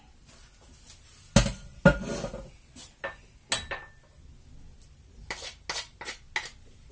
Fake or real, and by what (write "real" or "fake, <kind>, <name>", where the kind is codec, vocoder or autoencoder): real